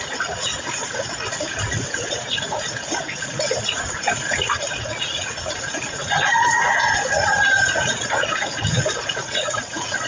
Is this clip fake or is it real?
fake